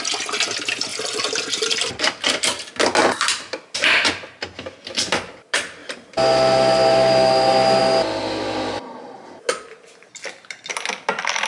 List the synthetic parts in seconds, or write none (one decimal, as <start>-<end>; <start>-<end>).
none